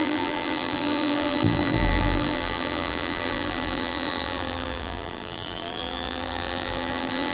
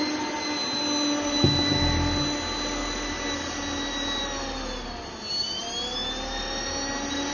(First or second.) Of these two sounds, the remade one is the first